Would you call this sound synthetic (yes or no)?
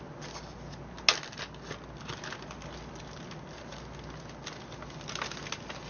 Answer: no